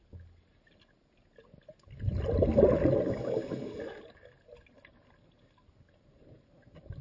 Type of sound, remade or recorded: recorded